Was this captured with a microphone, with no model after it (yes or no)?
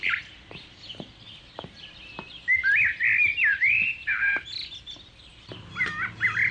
yes